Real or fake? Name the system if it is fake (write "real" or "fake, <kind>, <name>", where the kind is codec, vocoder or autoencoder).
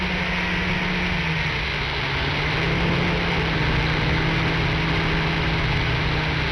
real